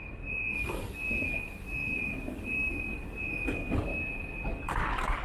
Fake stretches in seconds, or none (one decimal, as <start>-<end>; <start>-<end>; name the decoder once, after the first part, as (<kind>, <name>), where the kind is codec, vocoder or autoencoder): 0.0-3.9 (codec, DAC); 4.5-5.2